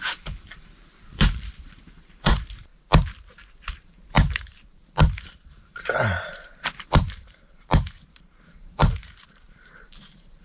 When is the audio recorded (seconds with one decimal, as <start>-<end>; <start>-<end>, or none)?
2.7-3.7